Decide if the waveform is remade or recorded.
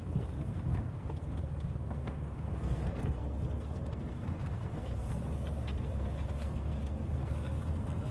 remade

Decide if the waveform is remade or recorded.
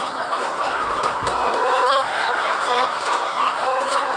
remade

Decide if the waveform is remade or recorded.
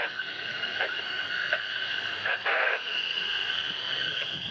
remade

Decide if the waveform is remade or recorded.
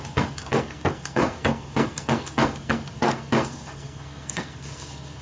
remade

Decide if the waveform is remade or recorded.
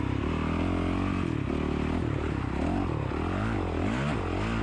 recorded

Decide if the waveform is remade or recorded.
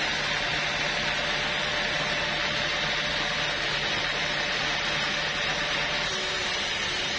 recorded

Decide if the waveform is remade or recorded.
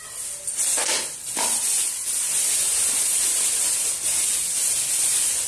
recorded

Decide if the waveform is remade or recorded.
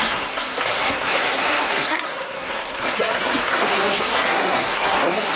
remade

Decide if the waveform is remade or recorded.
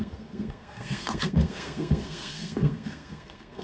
remade